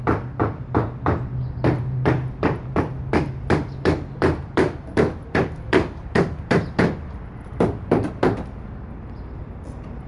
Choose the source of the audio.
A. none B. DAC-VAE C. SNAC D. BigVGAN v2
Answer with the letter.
D